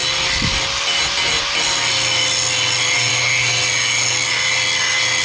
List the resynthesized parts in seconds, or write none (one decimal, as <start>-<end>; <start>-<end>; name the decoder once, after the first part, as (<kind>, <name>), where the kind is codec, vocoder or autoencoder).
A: none